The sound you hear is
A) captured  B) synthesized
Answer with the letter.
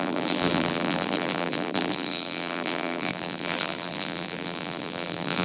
B